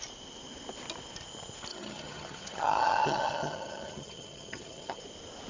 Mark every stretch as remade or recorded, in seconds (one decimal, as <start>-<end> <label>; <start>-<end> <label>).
0.0-1.7 recorded; 1.7-5.0 remade; 5.0-5.5 recorded